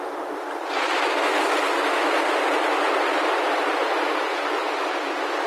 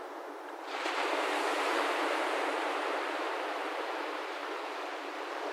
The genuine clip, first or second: first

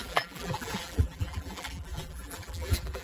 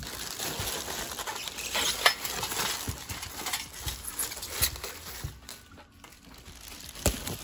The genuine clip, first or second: second